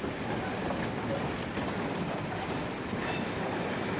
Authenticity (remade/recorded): recorded